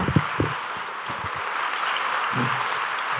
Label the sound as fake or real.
real